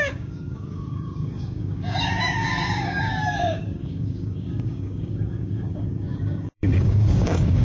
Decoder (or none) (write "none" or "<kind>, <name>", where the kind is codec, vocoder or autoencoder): codec, DAC